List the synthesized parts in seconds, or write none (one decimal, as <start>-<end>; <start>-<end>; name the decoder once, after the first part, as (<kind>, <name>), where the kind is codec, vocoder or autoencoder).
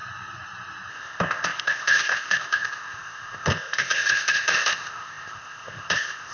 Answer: 0.9-6.3 (codec, ZipCodec)